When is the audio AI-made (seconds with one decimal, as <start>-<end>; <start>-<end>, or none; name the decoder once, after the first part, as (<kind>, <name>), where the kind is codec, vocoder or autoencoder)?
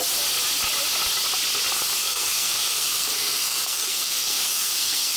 2.0-5.2 (codec, SNAC)